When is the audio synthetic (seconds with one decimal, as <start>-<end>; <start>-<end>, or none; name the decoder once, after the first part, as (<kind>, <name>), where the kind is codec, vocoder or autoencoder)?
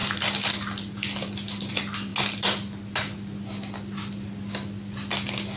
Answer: none